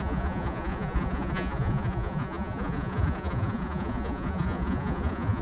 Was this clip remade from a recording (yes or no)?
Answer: yes